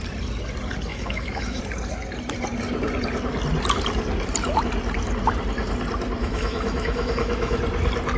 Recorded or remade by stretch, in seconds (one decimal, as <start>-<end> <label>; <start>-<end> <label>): 0.0-0.9 recorded; 0.9-1.6 remade; 1.6-6.2 recorded; 6.2-7.6 remade; 7.6-8.2 recorded

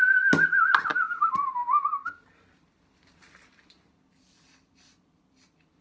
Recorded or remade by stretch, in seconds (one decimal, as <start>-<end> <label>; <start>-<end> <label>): 0.0-5.8 recorded

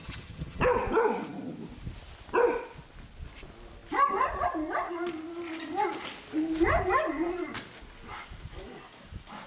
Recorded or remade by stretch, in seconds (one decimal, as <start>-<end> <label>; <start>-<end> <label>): 0.0-0.6 remade; 0.6-9.5 recorded

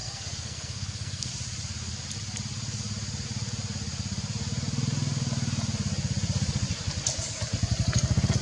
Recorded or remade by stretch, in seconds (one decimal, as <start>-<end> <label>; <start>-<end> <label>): 0.0-1.3 remade; 1.3-8.4 recorded

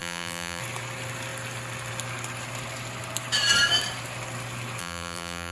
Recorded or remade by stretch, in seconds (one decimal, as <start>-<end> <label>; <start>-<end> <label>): 0.0-0.6 remade; 0.6-4.8 recorded; 4.8-5.5 remade